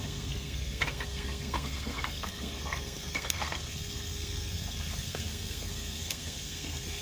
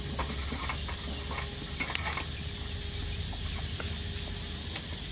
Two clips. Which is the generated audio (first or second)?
first